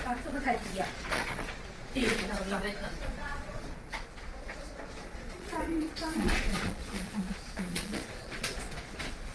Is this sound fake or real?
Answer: fake